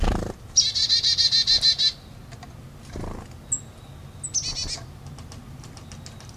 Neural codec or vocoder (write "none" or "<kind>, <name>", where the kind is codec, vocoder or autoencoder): none